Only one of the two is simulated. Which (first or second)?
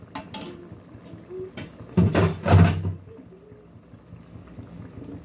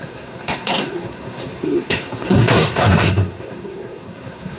second